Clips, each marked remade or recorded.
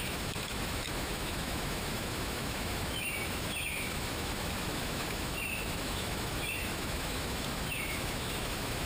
remade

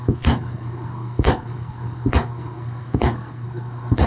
remade